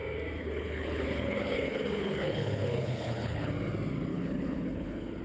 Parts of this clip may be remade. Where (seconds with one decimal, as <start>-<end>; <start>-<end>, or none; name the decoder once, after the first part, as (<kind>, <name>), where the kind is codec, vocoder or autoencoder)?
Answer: 0.4-3.5 (codec, HILCodec); 4.1-5.2